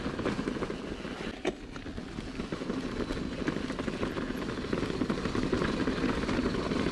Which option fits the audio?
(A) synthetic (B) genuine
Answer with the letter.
B